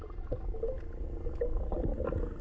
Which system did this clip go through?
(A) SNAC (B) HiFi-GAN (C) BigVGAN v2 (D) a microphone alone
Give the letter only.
D